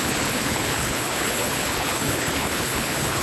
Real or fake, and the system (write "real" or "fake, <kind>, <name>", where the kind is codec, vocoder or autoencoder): fake, codec, HILCodec